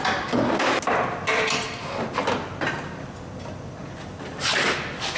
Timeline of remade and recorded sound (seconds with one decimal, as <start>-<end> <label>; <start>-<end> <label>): 0.0-5.2 recorded